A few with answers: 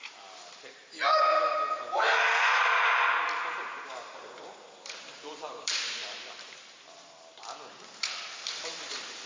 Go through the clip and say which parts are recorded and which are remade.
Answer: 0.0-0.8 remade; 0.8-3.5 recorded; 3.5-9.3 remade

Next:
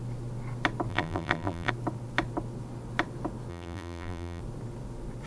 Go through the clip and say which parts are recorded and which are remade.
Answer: 0.0-0.9 recorded; 0.9-1.7 remade; 1.7-3.5 recorded; 3.5-4.4 remade; 4.4-5.3 recorded

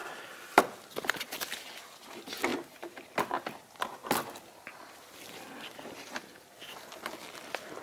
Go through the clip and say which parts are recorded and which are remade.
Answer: 0.0-0.6 remade; 0.6-3.9 recorded; 3.9-7.2 remade; 7.2-7.8 recorded

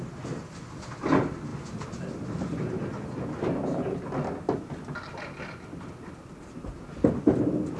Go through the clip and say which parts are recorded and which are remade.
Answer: 0.0-7.8 recorded

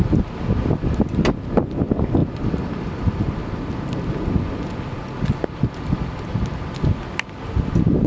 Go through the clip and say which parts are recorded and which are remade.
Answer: 0.0-8.1 recorded